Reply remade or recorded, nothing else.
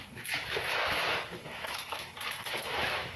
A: remade